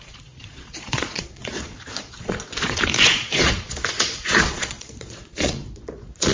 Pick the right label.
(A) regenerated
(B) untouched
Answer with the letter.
A